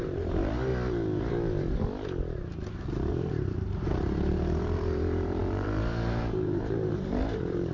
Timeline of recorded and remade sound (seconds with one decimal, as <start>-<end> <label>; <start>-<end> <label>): 0.0-0.7 remade; 0.7-3.1 recorded; 3.1-7.7 remade